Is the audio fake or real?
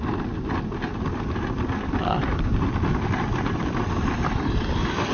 real